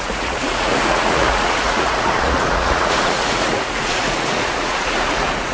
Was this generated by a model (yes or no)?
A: yes